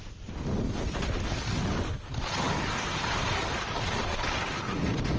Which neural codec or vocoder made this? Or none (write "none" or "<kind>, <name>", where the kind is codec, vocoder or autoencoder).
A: none